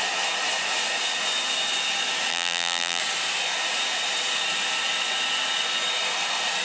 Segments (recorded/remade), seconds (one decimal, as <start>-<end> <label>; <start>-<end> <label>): 0.0-2.3 recorded; 2.3-3.0 remade; 3.0-6.6 recorded